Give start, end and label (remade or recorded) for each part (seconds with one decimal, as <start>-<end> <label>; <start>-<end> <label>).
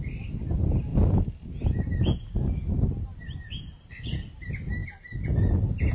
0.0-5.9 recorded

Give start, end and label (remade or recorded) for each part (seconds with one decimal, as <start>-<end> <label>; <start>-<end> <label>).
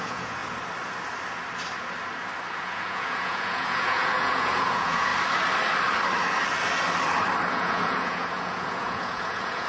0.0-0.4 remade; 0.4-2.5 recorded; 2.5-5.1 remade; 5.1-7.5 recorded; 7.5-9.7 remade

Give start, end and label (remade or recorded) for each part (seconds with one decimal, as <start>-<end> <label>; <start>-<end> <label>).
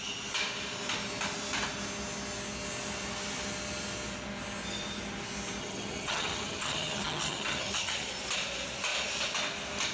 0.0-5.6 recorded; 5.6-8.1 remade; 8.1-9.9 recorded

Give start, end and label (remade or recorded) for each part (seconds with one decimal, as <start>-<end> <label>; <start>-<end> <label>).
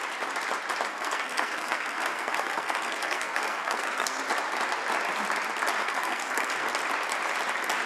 0.0-0.9 recorded; 0.9-4.2 remade; 4.2-5.8 recorded; 5.8-6.7 remade; 6.7-7.9 recorded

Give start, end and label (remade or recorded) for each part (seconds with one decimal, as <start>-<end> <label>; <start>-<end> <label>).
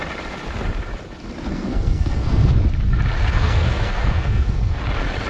0.0-1.5 recorded; 1.5-2.5 remade; 2.5-3.2 recorded; 3.2-4.8 remade; 4.8-5.3 recorded